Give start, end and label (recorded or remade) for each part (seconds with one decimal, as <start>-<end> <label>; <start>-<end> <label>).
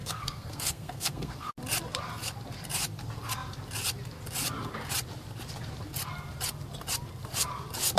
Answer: 0.0-1.5 remade; 1.5-8.0 recorded